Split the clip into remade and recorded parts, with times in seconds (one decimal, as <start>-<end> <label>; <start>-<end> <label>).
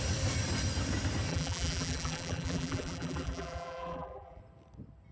0.0-1.3 recorded; 1.3-4.4 remade; 4.4-5.1 recorded